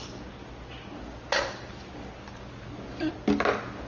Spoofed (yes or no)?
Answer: no